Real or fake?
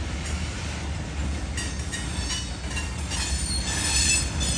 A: real